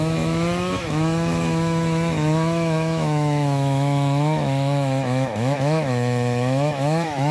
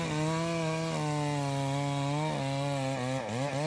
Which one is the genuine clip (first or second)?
second